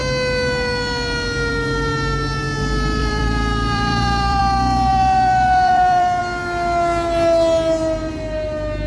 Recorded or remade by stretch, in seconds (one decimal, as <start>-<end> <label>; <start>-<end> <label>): 0.0-3.0 recorded; 3.0-4.4 remade; 4.4-4.9 recorded; 4.9-6.2 remade; 6.2-8.9 recorded